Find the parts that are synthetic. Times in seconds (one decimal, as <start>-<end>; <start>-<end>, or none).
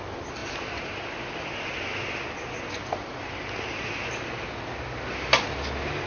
none